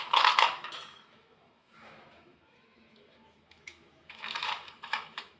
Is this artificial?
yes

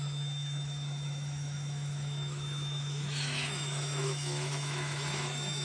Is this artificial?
yes